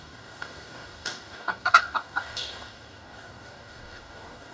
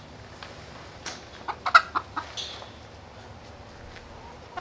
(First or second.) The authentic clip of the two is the second